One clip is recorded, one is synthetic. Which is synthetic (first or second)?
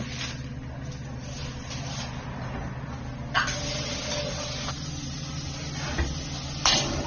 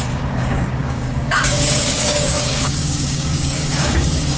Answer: second